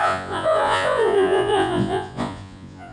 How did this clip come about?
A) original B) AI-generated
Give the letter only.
B